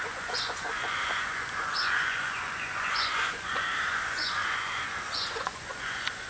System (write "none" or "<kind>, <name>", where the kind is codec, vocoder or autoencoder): vocoder, Vocos